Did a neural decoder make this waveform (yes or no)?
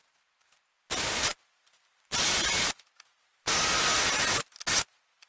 no